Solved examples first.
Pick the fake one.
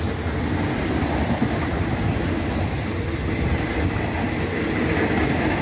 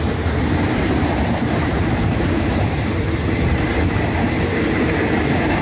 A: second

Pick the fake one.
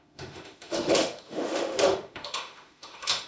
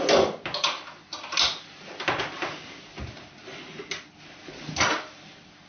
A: first